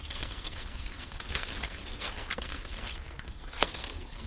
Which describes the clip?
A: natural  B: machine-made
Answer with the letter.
B